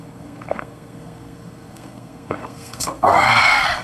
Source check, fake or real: fake